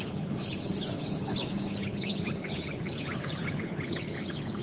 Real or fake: fake